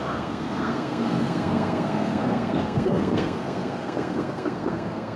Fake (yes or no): yes